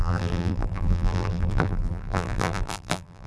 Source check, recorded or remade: remade